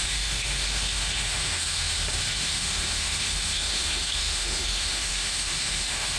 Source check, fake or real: fake